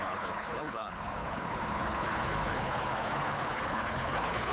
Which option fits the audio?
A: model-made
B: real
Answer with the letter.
A